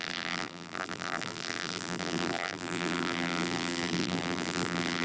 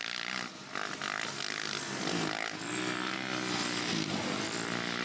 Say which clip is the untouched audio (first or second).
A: second